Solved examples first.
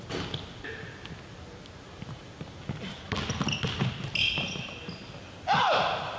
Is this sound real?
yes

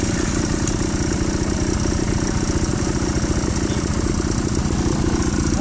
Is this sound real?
yes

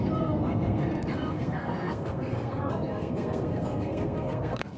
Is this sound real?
no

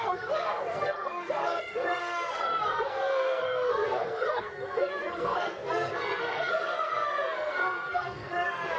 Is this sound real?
no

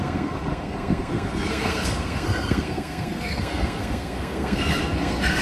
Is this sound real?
no